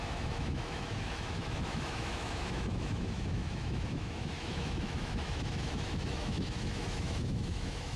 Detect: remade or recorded remade